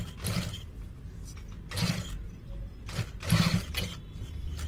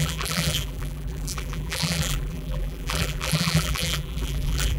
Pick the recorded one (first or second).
first